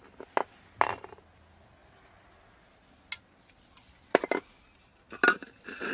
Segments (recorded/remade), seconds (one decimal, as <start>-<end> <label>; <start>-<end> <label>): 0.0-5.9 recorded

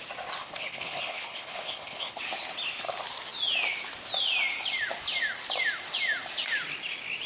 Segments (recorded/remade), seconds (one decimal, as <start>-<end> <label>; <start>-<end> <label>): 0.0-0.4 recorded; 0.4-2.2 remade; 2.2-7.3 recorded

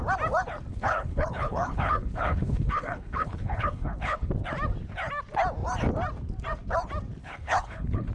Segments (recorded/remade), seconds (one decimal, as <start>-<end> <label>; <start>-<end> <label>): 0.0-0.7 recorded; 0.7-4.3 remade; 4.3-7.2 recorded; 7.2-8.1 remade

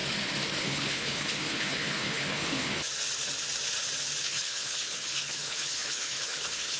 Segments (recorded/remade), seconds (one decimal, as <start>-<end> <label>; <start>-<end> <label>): 0.0-0.6 recorded; 0.6-2.8 remade; 2.8-4.2 recorded; 4.2-6.8 remade

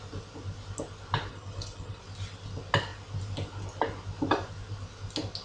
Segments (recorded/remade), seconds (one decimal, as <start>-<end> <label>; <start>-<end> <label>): 0.0-1.3 recorded; 1.3-2.0 remade; 2.0-5.4 recorded

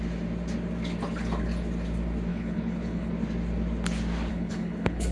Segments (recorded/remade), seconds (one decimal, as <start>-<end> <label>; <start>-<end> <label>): 0.0-2.3 recorded; 2.3-3.1 remade; 3.1-4.3 recorded; 4.3-5.1 remade

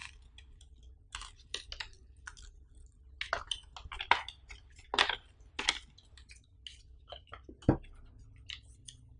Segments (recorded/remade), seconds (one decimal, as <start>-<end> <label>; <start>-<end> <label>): 0.0-9.2 recorded